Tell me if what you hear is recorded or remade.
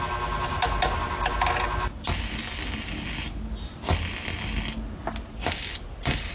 recorded